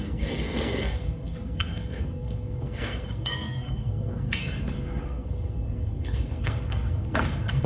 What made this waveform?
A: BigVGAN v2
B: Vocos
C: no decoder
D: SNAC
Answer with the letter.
D